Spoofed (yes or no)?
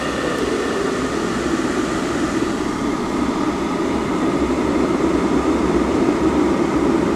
no